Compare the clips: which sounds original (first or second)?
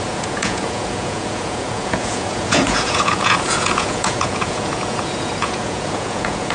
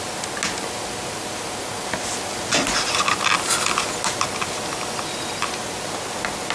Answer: second